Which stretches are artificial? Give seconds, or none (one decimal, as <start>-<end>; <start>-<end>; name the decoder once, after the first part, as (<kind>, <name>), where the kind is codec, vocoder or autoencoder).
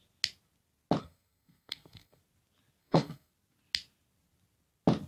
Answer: 1.0-2.2 (codec, SNAC); 2.8-3.3